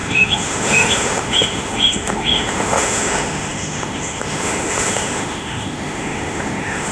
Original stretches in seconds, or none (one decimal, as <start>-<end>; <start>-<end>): none